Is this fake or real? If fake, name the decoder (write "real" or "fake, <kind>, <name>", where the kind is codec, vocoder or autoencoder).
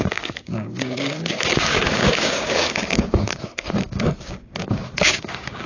fake, codec, DAC